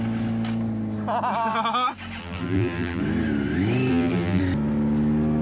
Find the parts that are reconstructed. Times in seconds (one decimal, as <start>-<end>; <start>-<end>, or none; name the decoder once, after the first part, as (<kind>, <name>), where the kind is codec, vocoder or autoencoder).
2.2-3.0 (vocoder, BigVGAN v2); 3.9-4.4